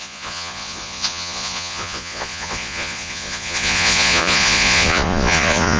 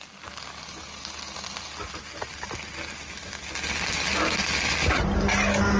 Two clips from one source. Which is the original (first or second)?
second